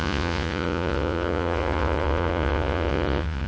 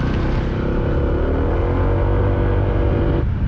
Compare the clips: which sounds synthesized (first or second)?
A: first